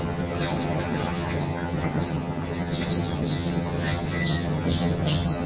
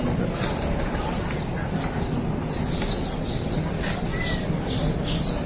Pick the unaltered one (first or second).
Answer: second